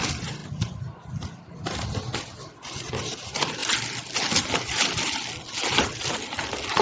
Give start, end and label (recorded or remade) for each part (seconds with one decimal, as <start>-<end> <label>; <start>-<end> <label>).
0.0-6.8 recorded